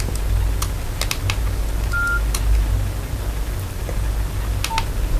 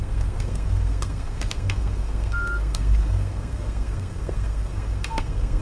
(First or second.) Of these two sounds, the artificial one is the second